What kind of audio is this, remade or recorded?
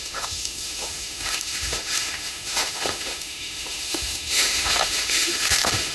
remade